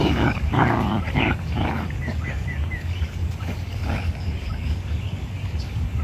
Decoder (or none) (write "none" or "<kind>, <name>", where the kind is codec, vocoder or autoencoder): codec, DAC